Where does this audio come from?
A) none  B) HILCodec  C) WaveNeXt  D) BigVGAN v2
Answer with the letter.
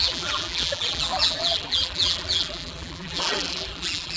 D